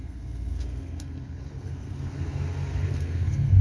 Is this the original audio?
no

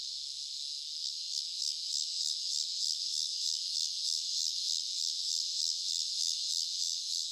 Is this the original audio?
no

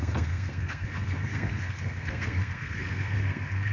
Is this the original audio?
no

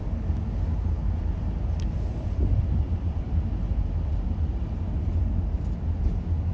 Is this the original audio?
yes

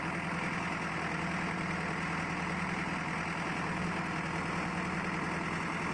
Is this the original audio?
yes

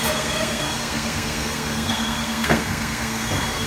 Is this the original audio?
no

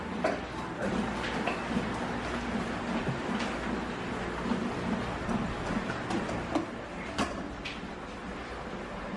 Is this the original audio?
yes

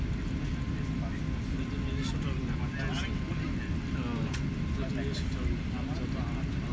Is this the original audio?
yes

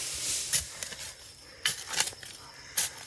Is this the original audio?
yes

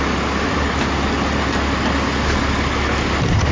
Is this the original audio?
yes